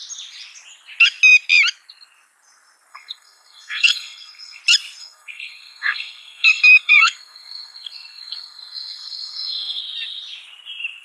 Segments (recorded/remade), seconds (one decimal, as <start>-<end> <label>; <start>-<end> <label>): 0.0-2.9 recorded; 2.9-4.6 remade; 4.6-5.0 recorded; 5.0-9.8 remade; 9.8-11.0 recorded